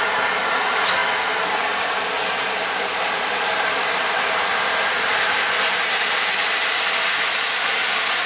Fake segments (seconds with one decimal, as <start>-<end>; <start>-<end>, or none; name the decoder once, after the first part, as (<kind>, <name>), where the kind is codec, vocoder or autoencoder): none